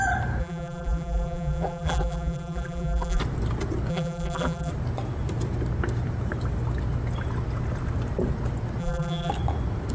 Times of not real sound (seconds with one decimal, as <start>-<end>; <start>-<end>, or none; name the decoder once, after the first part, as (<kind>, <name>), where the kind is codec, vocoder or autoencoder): 0.4-3.2 (vocoder, BigVGAN v2); 3.9-4.7; 8.8-9.3